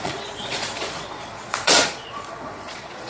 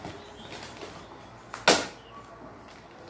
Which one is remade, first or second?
first